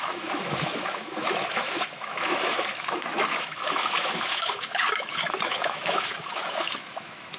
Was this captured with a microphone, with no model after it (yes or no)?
no